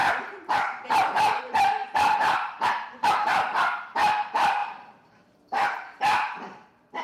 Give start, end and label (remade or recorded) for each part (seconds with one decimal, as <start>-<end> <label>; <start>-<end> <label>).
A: 0.0-1.4 remade; 1.4-1.8 recorded; 1.8-3.8 remade; 3.8-4.6 recorded; 4.6-7.0 remade